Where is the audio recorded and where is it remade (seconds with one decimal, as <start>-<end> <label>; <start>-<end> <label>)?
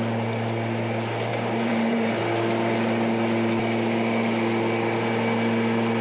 0.0-1.3 recorded; 1.3-2.2 remade; 2.2-6.0 recorded